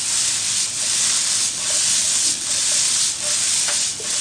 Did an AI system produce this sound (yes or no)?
no